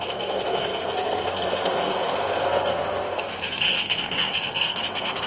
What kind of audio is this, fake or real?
fake